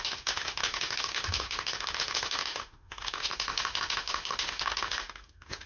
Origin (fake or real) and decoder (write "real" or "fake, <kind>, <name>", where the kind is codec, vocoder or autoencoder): fake, autoencoder, DAC-VAE